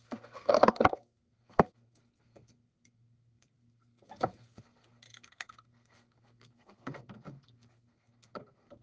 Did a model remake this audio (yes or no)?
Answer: yes